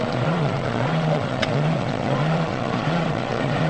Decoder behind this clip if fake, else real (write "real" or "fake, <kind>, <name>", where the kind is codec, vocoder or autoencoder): fake, vocoder, Vocos